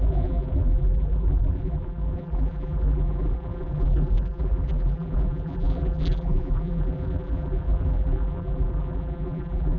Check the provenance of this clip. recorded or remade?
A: remade